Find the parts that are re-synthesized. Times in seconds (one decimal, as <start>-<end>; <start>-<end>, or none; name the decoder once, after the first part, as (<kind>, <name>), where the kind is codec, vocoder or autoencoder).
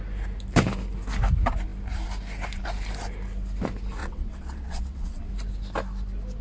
4.0-5.3 (vocoder, WaveNeXt)